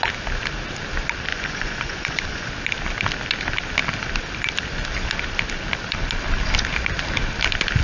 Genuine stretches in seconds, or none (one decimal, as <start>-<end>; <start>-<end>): 0.0-1.3; 2.5-7.8